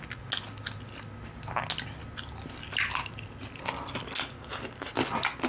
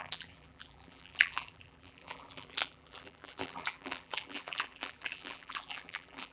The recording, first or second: first